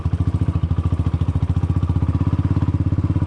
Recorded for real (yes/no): yes